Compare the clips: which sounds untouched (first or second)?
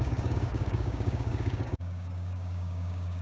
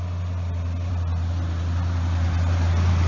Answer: second